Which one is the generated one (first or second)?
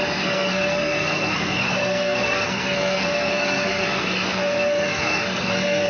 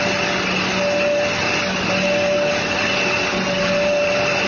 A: first